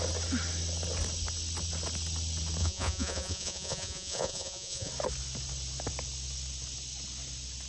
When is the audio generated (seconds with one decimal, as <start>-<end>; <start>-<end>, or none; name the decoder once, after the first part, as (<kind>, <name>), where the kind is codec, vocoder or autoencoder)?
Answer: 2.6-4.9 (vocoder, Vocos)

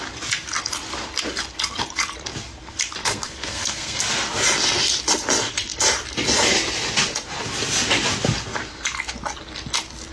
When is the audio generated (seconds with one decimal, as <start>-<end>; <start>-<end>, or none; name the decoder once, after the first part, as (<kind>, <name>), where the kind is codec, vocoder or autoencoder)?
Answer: 3.0-4.0 (codec, SNAC)

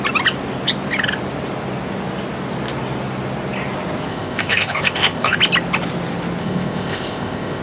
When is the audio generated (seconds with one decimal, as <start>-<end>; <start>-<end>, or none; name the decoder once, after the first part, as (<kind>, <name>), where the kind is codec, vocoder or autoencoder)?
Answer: 4.1-5.4 (codec, ZipCodec); 6.4-7.6

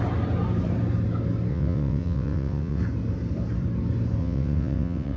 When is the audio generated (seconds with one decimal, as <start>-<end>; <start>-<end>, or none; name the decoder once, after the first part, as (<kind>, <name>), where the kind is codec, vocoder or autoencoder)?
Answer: 1.5-2.8 (vocoder, WaveNeXt); 4.2-5.2